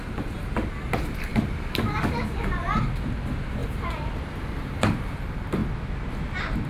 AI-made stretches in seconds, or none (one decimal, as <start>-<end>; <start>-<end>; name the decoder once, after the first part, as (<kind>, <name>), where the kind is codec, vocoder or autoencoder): 1.3-1.9 (vocoder, BigVGAN v2); 3.6-5.1